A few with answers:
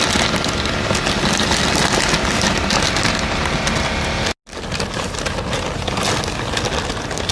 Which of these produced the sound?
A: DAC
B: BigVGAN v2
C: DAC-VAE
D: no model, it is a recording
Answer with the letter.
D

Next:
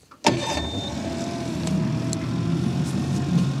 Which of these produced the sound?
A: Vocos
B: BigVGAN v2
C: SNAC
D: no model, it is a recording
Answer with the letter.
D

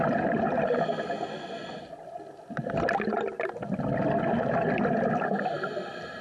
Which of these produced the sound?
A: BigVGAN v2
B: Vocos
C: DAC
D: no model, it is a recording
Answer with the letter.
D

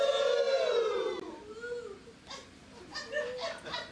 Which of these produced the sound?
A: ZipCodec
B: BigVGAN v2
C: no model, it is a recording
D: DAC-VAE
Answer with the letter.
C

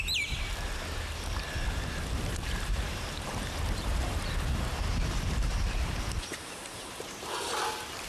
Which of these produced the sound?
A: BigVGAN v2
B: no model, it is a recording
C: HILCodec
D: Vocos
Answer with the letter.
A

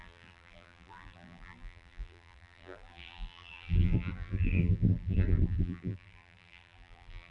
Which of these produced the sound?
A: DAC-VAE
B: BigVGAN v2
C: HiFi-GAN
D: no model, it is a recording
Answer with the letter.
B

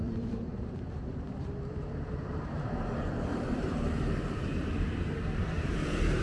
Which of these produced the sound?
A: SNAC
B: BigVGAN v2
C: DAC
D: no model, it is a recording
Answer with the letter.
B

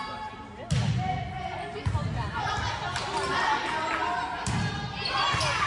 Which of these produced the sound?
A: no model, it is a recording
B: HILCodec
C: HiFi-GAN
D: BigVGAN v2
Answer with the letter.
A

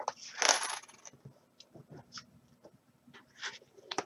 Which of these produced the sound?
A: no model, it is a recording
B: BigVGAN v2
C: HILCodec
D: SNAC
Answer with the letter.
A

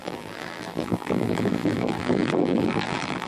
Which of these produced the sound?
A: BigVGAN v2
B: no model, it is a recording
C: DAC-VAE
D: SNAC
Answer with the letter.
A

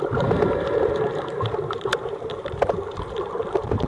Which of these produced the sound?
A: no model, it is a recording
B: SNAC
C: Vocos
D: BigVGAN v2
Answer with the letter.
D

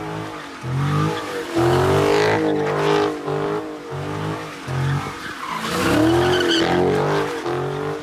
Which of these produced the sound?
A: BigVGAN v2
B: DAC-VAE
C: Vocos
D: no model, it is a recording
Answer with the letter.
D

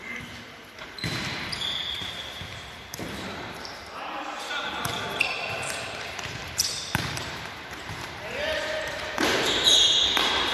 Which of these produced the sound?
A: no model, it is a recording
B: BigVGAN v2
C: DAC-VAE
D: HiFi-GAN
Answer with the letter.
B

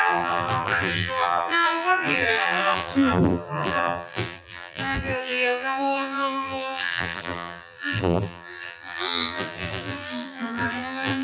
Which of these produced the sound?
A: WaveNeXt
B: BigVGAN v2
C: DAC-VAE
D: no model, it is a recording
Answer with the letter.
B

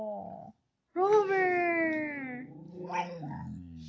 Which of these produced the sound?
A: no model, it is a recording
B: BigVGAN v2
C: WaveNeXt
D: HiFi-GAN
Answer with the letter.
A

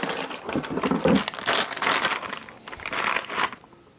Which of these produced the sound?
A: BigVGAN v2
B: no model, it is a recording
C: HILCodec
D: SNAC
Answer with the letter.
B